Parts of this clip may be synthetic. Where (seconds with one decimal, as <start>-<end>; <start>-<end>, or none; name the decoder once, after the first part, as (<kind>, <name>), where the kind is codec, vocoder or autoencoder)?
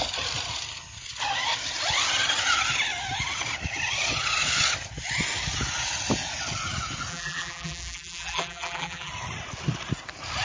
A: 7.1-9.1 (vocoder, BigVGAN v2)